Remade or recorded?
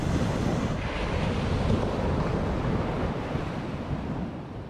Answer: recorded